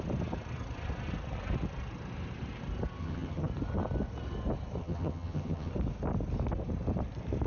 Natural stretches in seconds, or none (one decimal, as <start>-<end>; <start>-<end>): 0.0-3.0; 3.5-4.8; 5.7-7.5